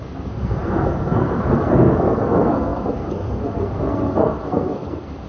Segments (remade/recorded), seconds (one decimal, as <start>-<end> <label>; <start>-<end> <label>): 0.0-5.3 remade